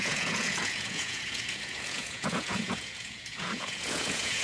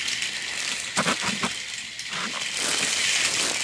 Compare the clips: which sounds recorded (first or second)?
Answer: second